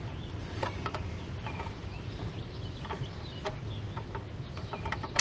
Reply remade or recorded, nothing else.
recorded